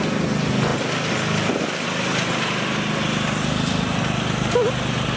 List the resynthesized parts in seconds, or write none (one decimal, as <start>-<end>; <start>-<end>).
none

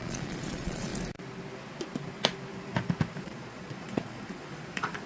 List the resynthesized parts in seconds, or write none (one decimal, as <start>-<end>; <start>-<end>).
0.0-0.9; 3.2-5.1

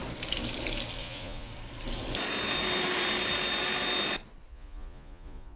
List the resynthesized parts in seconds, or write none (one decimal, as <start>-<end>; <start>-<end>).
1.0-1.5; 4.5-5.6

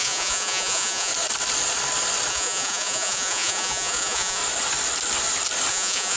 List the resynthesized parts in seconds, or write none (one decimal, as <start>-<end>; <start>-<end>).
0.0-1.1; 2.3-4.4; 5.7-6.2